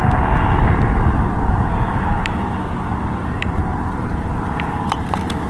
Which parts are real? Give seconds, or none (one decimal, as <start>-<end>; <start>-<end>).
0.0-0.6